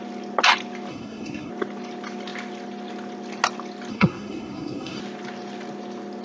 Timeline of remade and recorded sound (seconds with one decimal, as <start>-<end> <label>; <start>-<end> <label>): 0.0-0.9 recorded; 0.9-1.5 remade; 1.5-3.9 recorded; 3.9-5.0 remade; 5.0-6.2 recorded